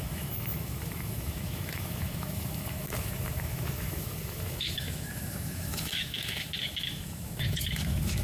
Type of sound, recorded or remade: remade